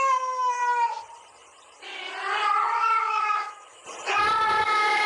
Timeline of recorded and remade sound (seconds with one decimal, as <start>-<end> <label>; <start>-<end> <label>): 0.0-0.6 remade; 0.6-3.0 recorded; 3.0-3.8 remade; 3.8-4.6 recorded; 4.6-5.1 remade